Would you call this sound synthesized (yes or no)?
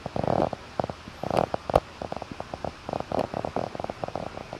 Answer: no